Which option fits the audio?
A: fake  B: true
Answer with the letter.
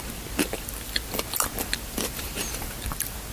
B